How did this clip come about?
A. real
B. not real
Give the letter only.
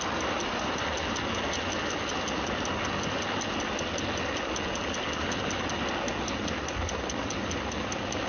A